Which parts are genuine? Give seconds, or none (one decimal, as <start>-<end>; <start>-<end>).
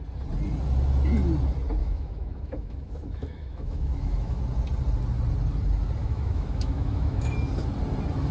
0.0-1.8; 4.4-6.0; 7.3-8.3